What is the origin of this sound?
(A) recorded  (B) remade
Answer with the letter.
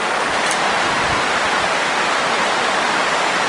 A